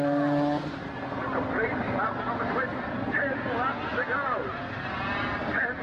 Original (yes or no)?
yes